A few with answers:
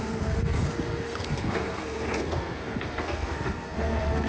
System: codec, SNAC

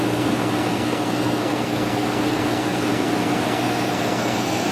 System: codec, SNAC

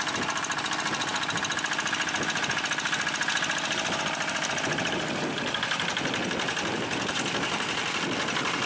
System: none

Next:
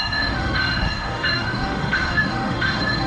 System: autoencoder, DAC-VAE